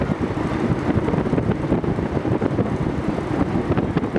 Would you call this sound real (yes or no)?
yes